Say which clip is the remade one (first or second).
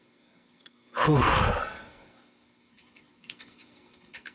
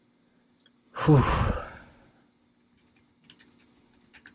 first